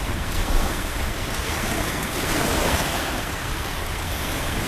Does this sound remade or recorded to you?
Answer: remade